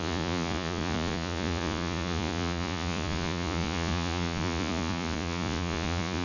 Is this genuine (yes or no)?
no